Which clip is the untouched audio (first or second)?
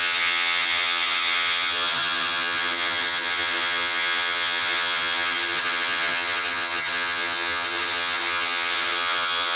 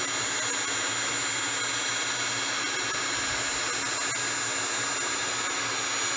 second